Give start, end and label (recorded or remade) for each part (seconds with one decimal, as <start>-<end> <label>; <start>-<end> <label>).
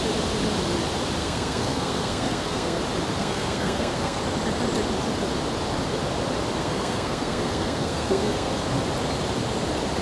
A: 0.0-1.2 recorded; 1.2-2.8 remade; 2.8-3.2 recorded; 3.2-4.2 remade; 4.2-6.6 recorded; 6.6-8.5 remade; 8.5-10.0 recorded